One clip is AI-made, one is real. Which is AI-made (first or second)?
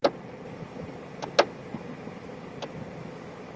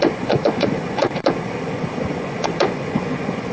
second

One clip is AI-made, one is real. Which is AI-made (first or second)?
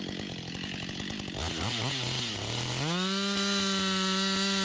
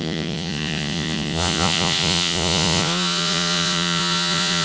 second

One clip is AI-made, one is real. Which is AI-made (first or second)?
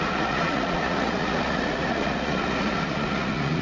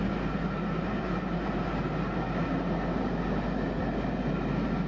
first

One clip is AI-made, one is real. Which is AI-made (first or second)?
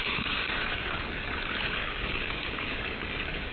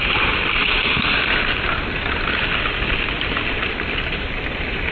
first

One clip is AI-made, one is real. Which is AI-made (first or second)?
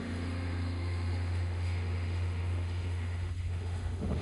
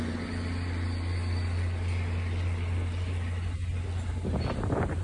first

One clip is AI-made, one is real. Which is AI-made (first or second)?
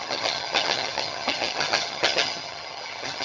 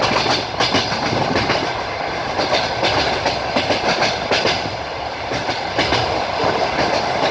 first